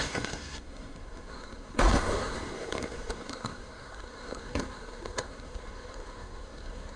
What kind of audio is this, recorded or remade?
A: remade